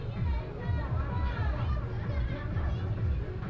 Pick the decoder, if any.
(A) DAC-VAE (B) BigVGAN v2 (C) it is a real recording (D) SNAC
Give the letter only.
C